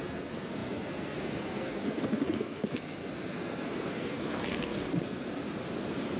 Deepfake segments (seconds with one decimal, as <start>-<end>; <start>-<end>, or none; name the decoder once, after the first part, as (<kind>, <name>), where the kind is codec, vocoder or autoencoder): 0.0-5.4 (codec, SNAC)